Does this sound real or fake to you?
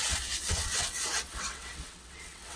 fake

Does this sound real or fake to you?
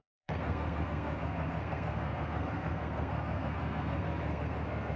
fake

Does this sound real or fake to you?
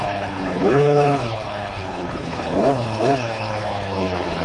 fake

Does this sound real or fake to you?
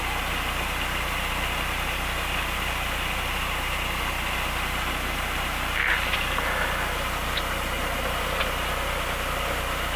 real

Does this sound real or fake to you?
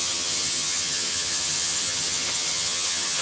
fake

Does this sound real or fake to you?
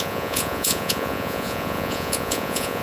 fake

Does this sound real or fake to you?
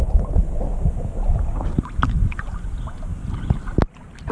real